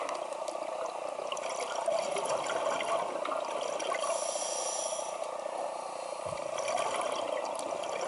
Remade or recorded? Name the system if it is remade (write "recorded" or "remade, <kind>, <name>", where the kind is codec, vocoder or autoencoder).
recorded